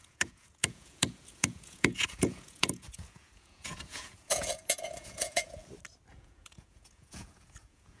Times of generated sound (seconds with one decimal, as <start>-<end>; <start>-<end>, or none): 0.0-5.6; 6.1-8.0